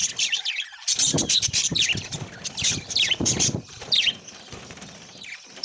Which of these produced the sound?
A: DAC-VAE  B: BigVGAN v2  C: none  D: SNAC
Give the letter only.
B